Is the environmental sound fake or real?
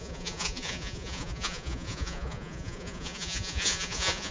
fake